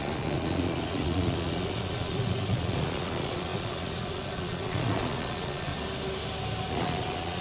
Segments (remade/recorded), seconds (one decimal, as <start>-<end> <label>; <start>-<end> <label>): 0.0-5.7 remade; 5.7-6.7 recorded; 6.7-7.4 remade